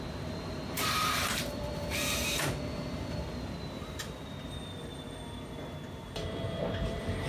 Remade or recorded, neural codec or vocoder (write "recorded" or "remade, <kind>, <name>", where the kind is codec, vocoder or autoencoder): remade, vocoder, BigVGAN v2